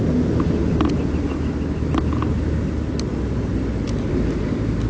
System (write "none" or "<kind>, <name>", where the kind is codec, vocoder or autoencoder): none